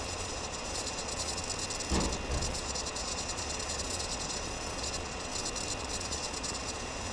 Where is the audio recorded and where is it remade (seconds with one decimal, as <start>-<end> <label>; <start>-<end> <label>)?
0.0-1.4 remade; 1.4-2.4 recorded; 2.4-5.3 remade; 5.3-5.8 recorded; 5.8-7.1 remade